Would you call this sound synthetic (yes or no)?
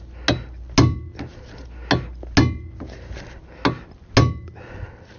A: no